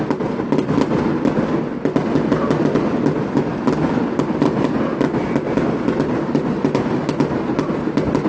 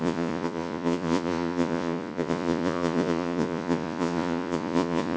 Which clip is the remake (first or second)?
second